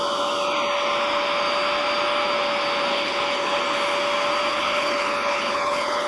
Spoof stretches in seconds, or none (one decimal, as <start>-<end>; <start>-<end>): 2.9-3.6; 4.5-6.1

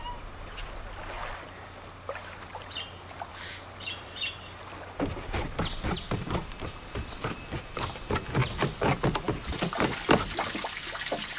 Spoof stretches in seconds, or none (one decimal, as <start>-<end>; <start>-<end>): none

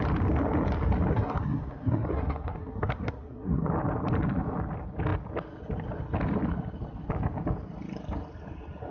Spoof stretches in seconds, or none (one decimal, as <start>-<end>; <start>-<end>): 1.1-3.7

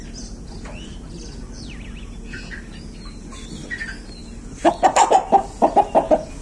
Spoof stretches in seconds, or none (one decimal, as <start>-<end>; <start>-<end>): none

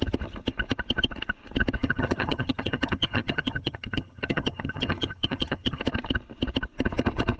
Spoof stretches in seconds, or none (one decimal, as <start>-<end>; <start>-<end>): 1.8-5.8

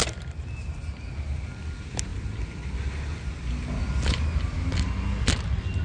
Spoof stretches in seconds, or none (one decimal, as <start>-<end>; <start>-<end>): none

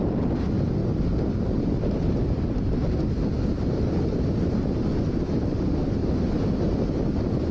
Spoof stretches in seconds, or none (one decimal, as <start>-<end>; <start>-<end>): none

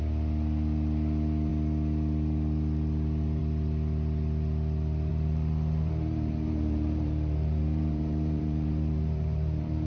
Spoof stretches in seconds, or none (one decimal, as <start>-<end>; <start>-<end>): 5.1-9.9